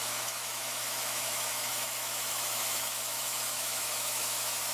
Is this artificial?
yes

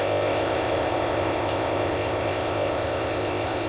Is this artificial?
yes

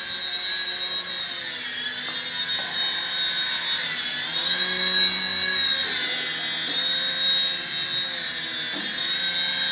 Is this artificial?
no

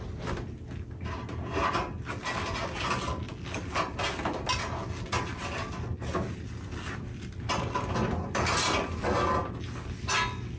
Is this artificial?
no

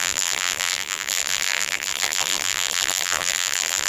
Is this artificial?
yes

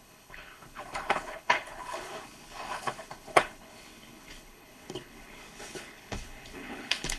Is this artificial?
yes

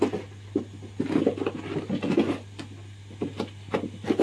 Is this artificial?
no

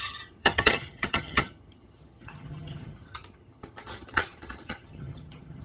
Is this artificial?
yes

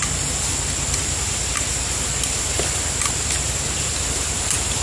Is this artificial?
no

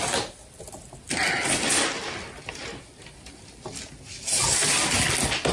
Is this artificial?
no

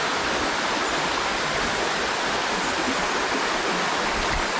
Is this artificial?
no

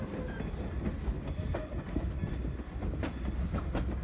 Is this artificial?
no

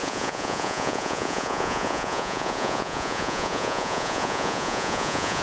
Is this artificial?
yes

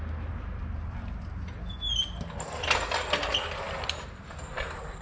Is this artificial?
no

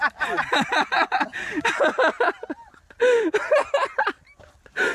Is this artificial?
no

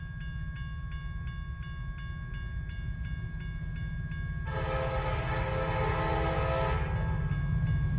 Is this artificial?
no